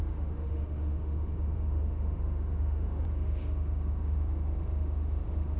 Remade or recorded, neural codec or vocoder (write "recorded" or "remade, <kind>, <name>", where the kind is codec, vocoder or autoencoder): remade, autoencoder, DAC-VAE